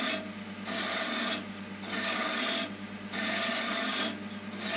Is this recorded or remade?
recorded